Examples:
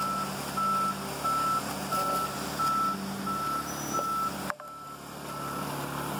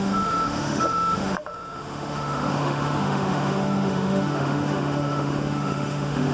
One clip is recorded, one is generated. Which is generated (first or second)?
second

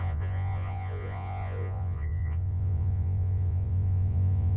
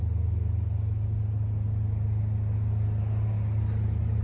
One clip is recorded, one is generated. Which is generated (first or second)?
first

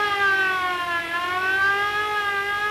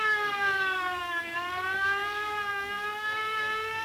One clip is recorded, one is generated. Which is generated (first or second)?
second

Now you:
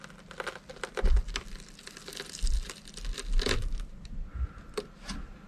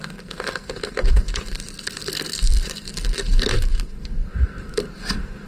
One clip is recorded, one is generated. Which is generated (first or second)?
second